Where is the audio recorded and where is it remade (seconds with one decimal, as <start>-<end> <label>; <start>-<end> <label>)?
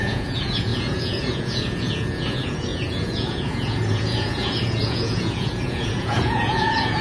0.0-7.0 remade